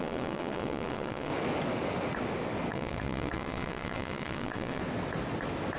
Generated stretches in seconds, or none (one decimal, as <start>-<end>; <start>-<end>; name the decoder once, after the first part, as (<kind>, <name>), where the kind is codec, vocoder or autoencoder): 0.0-1.3 (vocoder, WaveNeXt); 2.7-4.8